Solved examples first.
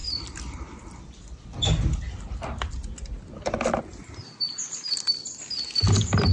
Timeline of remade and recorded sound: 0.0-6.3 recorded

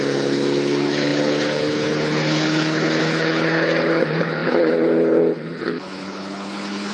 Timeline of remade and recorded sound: 0.0-6.9 remade